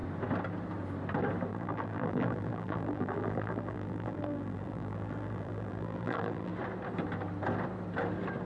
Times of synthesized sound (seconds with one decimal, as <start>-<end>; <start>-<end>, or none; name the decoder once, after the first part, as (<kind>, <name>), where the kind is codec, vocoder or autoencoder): 1.5-6.5 (vocoder, BigVGAN v2)